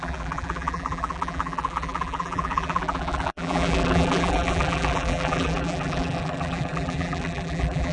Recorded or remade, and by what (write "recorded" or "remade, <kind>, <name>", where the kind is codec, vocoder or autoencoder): remade, vocoder, BigVGAN v2